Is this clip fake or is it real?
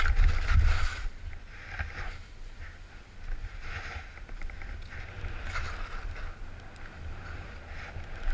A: real